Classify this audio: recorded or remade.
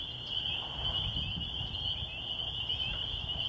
recorded